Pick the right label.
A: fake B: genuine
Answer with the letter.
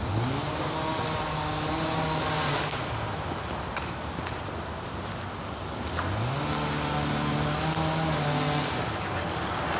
B